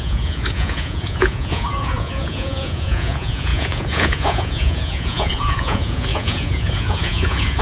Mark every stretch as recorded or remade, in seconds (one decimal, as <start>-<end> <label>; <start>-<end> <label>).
0.0-7.6 remade